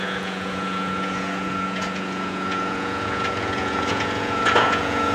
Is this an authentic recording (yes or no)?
no